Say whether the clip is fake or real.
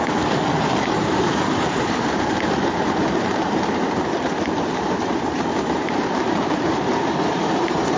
fake